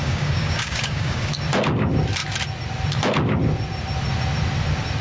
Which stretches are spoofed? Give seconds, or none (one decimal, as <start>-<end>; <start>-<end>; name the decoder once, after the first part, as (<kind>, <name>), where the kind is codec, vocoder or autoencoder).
0.0-1.3 (codec, DAC)